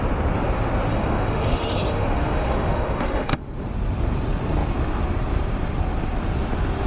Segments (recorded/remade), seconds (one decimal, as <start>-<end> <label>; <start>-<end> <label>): 0.0-0.9 recorded; 0.9-3.4 remade; 3.4-6.9 recorded